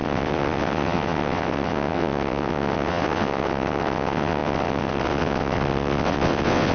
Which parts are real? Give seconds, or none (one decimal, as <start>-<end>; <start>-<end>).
none